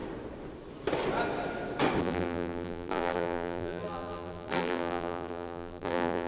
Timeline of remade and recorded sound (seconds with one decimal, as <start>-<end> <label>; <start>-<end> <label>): 0.0-2.0 recorded; 2.0-6.3 remade

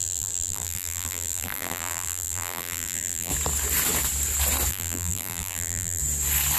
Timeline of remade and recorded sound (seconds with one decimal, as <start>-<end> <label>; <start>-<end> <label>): 0.0-3.3 remade; 3.3-4.7 recorded; 4.7-6.0 remade; 6.0-6.6 recorded

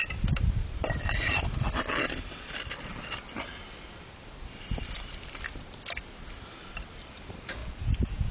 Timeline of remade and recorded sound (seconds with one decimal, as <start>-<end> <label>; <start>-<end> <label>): 0.0-7.6 recorded; 7.6-8.3 remade

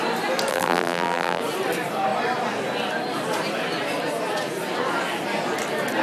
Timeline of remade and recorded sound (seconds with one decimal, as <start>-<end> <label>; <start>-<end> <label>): 0.0-0.5 recorded; 0.5-1.4 remade; 1.4-6.0 recorded

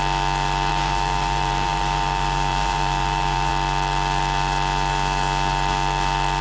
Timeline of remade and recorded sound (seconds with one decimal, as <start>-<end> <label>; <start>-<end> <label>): 0.0-0.7 recorded; 0.7-3.5 remade; 3.5-6.4 recorded

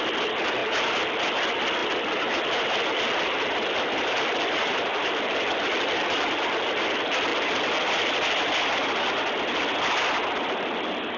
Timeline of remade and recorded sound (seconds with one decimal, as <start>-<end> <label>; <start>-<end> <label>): 0.0-1.8 recorded; 1.8-6.2 remade; 6.2-11.2 recorded